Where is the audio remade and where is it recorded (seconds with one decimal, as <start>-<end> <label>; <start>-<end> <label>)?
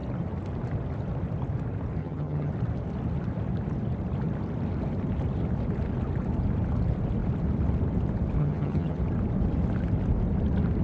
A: 0.0-2.0 recorded; 2.0-2.5 remade; 2.5-8.4 recorded; 8.4-9.0 remade; 9.0-10.8 recorded